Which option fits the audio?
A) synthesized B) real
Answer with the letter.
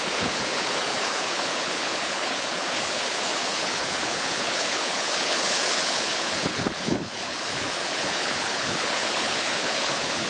A